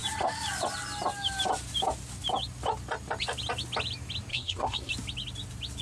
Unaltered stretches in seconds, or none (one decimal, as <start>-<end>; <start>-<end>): 0.0-4.3; 4.9-5.8